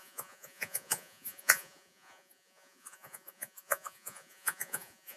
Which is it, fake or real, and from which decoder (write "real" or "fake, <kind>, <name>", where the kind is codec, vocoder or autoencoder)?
fake, vocoder, Vocos